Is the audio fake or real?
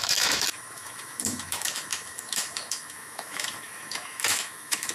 fake